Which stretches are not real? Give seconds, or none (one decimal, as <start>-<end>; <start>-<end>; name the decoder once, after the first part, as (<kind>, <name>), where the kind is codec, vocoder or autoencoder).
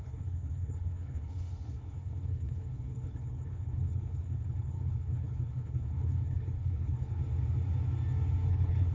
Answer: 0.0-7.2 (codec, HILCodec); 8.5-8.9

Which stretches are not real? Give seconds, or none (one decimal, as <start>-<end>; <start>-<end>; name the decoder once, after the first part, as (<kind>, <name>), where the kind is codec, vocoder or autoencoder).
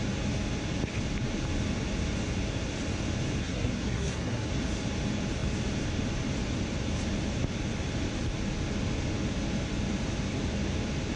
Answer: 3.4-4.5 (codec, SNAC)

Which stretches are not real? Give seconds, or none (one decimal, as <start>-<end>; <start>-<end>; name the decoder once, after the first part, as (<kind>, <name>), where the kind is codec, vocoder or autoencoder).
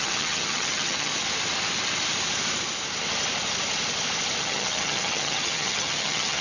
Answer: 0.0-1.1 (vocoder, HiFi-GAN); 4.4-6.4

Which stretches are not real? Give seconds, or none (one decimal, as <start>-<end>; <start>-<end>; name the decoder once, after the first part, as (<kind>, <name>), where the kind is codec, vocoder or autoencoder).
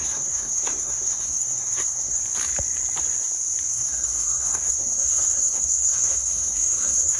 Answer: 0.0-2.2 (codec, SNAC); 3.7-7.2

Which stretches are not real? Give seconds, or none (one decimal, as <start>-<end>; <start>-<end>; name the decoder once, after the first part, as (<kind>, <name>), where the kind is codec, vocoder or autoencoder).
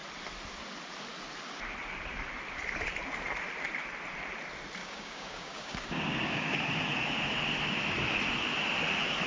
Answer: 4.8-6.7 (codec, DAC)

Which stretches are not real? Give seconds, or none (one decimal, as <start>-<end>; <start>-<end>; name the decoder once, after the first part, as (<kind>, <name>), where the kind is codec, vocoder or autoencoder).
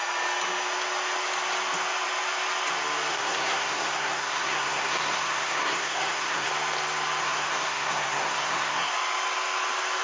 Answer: 3.1-6.5 (codec, SNAC); 7.2-8.9